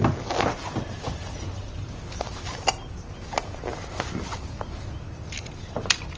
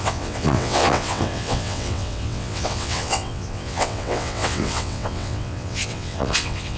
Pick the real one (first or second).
first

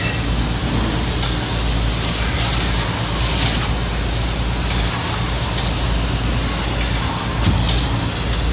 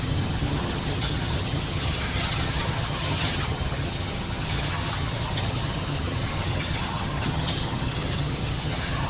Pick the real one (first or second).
first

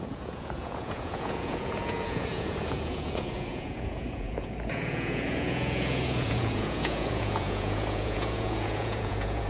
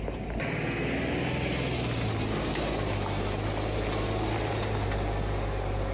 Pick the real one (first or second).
second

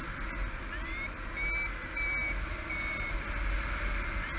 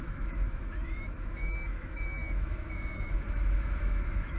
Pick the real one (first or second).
first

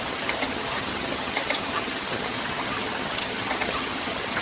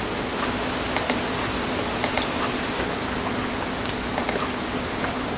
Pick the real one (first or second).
second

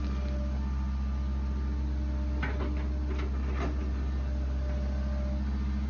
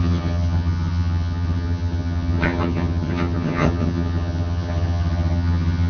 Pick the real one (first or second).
first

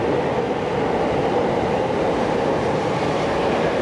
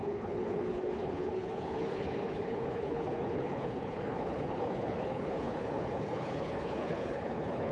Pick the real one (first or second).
first